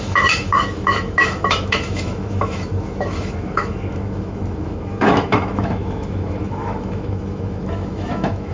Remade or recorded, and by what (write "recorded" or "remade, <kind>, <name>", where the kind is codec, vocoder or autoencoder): remade, autoencoder, DAC-VAE